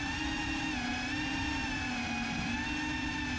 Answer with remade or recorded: recorded